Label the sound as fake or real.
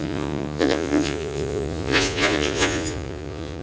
fake